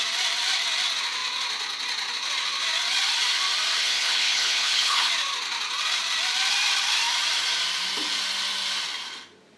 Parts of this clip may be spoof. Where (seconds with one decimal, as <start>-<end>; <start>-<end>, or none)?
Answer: 3.8-5.1